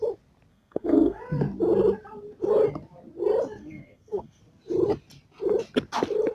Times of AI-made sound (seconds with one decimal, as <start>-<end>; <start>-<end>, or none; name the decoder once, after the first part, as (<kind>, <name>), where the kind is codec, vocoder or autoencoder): 0.5-1.2 (codec, SNAC); 3.6-4.4